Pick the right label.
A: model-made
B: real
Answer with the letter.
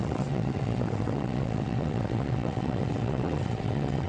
A